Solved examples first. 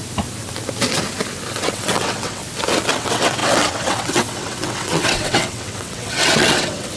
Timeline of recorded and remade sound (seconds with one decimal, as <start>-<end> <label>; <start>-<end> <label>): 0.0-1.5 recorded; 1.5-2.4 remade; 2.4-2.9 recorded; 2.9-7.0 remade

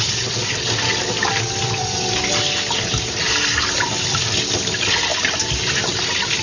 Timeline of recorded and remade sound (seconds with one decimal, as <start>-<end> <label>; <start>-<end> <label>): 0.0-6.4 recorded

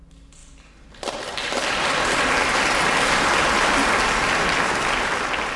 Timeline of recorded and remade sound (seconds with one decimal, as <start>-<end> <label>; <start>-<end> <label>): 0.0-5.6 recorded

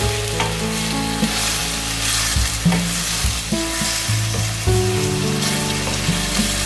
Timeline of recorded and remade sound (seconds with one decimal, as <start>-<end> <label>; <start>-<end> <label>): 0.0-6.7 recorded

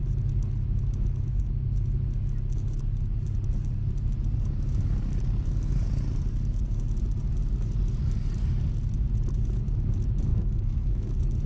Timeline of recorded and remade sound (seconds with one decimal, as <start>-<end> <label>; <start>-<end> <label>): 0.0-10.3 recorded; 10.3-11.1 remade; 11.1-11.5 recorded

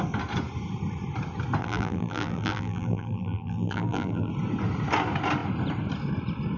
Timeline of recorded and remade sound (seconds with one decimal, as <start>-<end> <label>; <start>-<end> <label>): 0.0-1.6 recorded; 1.6-4.3 remade; 4.3-6.6 recorded

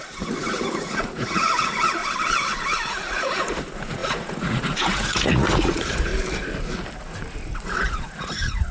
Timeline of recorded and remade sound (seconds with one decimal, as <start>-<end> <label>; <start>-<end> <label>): 0.0-2.0 remade; 2.0-2.9 recorded; 2.9-6.1 remade; 6.1-7.6 recorded; 7.6-8.7 remade

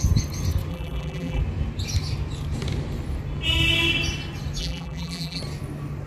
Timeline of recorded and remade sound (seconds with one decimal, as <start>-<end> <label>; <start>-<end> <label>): 0.0-0.7 recorded; 0.7-1.4 remade; 1.4-4.6 recorded; 4.6-5.4 remade; 5.4-6.1 recorded